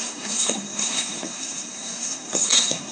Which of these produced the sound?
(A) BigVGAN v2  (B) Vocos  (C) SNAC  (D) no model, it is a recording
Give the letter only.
C